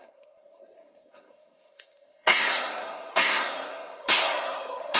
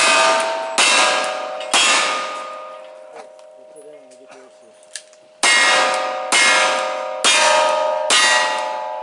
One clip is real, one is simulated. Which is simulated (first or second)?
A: first